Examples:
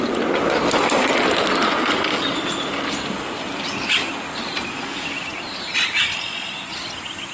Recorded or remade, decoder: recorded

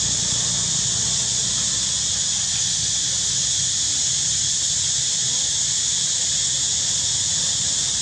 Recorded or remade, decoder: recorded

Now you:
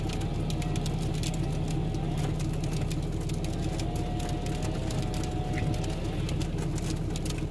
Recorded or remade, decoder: recorded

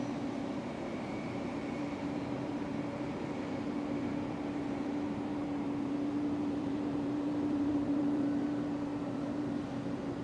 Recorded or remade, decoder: remade, vocoder, BigVGAN v2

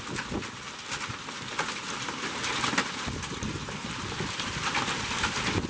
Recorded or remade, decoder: recorded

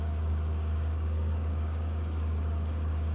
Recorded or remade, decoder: remade, codec, DAC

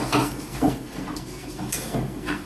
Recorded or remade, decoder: remade, codec, SNAC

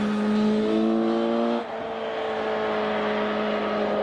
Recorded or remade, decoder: recorded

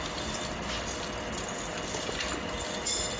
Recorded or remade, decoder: recorded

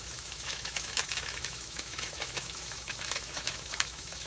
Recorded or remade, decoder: remade, autoencoder, DAC-VAE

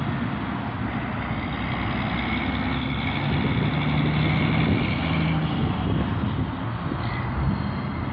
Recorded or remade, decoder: recorded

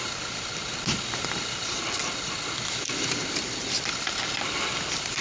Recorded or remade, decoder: recorded